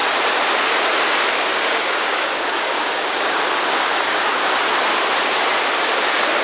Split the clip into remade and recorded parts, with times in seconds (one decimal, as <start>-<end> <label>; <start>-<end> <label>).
0.0-1.5 recorded; 1.5-4.5 remade; 4.5-6.4 recorded